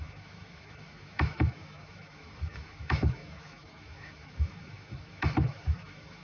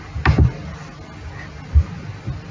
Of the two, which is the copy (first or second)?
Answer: first